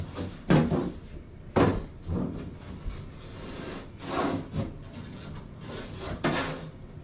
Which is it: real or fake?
real